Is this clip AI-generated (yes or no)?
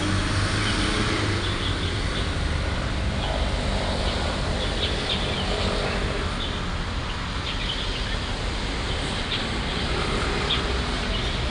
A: no